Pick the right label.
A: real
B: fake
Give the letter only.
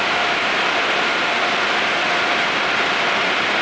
A